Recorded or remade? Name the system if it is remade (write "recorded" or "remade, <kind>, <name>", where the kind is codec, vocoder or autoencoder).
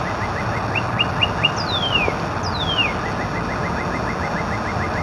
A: recorded